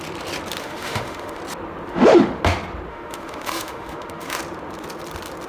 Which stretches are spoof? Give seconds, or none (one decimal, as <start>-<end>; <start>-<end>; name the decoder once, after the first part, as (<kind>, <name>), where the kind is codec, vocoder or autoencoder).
0.6-1.4 (autoencoder, DAC-VAE); 1.9-2.4; 2.9-4.4